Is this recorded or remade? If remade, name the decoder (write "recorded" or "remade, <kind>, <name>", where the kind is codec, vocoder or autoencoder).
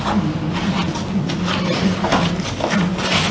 recorded